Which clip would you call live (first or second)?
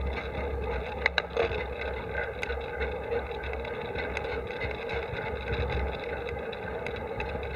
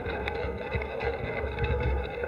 first